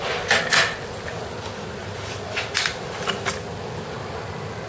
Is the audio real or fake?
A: real